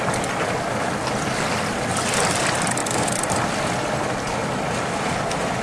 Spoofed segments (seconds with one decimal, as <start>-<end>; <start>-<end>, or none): none